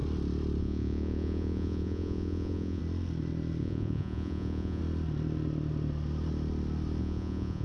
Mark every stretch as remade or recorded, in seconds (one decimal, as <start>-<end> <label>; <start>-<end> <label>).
0.0-0.6 recorded; 0.6-2.8 remade; 2.8-3.6 recorded; 3.6-4.8 remade; 4.8-7.0 recorded; 7.0-7.6 remade